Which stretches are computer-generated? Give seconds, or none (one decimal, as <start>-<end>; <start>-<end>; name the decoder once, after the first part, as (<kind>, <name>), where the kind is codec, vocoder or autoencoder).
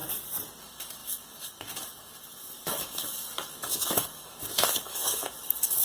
0.6-5.8 (autoencoder, DAC-VAE)